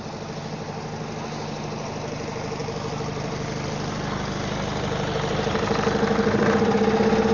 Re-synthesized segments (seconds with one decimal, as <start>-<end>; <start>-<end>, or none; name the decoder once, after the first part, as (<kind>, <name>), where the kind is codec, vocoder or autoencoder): 2.6-5.3 (vocoder, BigVGAN v2)